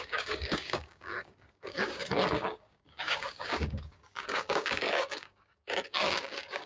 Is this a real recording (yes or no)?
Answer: no